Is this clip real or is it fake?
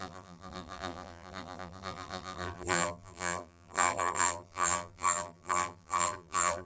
fake